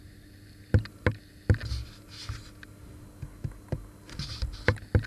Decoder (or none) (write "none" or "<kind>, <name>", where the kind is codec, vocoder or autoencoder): none